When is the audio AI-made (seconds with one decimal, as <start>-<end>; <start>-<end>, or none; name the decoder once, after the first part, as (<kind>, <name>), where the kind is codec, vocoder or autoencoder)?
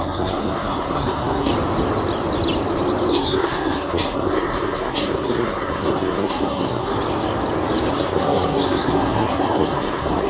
0.0-1.5 (codec, SNAC); 3.1-6.9; 7.9-10.3